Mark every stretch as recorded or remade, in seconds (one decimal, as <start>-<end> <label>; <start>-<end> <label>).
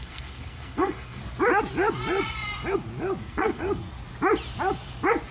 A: 0.0-1.2 remade; 1.2-3.2 recorded; 3.2-3.6 remade; 3.6-5.3 recorded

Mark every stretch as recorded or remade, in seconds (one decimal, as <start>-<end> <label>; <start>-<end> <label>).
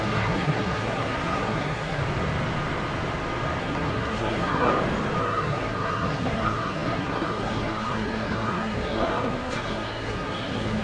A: 0.0-2.0 remade; 2.0-3.6 recorded; 3.6-4.7 remade; 4.7-5.2 recorded; 5.2-10.8 remade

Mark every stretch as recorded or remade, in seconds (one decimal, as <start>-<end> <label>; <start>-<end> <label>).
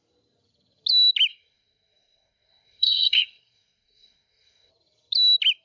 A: 0.0-1.3 recorded; 1.3-4.7 remade; 4.7-5.6 recorded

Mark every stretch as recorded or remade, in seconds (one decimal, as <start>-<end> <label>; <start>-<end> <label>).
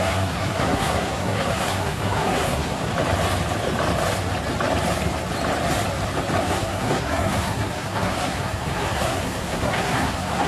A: 0.0-2.9 remade; 2.9-6.4 recorded; 6.4-10.5 remade